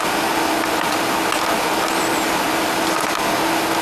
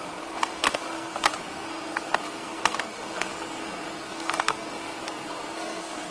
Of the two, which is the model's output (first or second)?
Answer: second